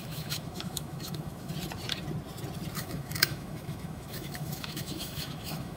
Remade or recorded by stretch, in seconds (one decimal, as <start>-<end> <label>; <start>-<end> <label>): 0.0-1.5 remade; 1.5-2.8 recorded; 2.8-5.8 remade